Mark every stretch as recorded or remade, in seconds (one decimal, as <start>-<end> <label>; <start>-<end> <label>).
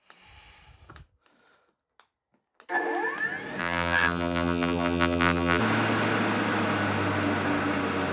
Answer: 0.0-3.6 recorded; 3.6-5.6 remade; 5.6-8.1 recorded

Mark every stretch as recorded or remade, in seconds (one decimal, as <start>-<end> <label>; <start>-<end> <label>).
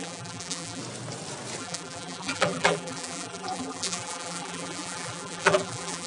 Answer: 0.0-0.8 remade; 0.8-1.6 recorded; 1.6-6.1 remade